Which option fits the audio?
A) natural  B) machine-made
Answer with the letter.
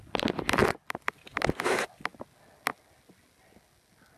A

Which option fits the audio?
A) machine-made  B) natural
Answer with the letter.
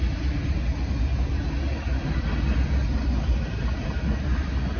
B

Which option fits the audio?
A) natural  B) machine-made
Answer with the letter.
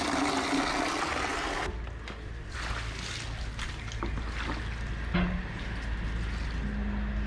A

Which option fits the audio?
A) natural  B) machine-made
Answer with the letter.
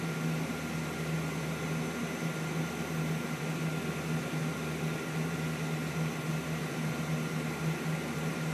A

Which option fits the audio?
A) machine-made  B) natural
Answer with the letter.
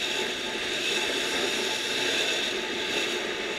B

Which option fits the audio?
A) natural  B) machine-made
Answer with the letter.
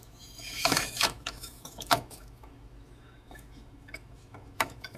B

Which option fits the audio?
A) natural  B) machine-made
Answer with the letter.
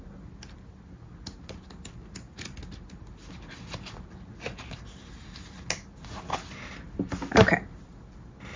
A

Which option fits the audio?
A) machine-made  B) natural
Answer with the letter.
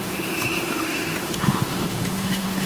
A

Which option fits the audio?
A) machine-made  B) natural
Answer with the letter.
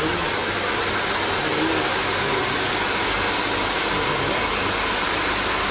B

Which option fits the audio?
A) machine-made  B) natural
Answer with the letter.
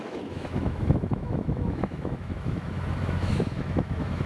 A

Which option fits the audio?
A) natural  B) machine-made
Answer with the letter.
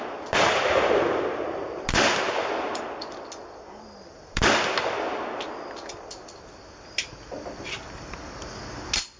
A